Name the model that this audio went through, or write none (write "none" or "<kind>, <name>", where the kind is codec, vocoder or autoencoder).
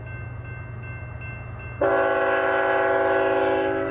none